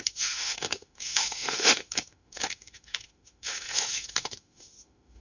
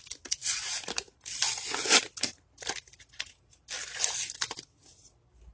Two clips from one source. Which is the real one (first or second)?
second